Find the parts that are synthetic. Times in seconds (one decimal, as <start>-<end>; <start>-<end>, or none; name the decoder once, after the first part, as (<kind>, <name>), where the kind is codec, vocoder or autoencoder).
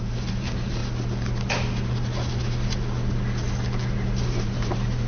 0.0-0.8 (vocoder, BigVGAN v2); 3.9-5.1